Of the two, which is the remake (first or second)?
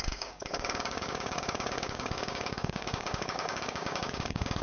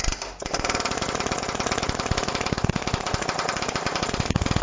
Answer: first